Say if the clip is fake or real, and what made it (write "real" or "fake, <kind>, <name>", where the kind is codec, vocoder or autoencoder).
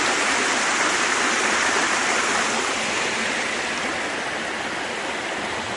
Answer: real